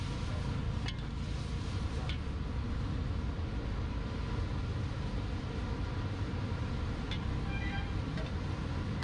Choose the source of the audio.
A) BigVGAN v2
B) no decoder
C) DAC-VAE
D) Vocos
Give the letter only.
B